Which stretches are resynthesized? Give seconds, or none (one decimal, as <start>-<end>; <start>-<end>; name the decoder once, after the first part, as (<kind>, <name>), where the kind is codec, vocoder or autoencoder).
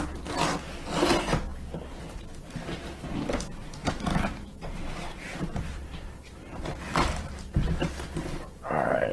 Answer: 3.8-7.5 (vocoder, BigVGAN v2)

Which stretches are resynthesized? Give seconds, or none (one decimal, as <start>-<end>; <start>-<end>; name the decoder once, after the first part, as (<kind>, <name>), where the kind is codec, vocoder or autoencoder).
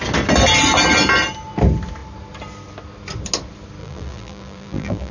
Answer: 3.8-5.1 (vocoder, BigVGAN v2)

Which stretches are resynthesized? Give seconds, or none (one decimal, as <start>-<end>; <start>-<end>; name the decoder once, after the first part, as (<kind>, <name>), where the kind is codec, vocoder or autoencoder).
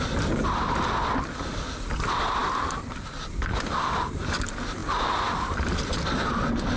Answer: 2.4-4.2 (vocoder, BigVGAN v2); 4.8-5.3